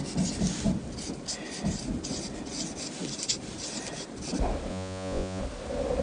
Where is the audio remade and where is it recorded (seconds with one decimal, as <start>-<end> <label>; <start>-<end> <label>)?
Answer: 0.0-4.7 recorded; 4.7-5.4 remade; 5.4-6.0 recorded